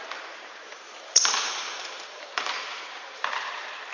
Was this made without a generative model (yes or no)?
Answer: no